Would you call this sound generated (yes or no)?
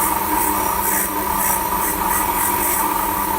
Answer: no